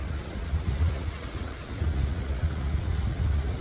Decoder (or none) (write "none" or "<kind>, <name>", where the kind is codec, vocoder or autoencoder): vocoder, Vocos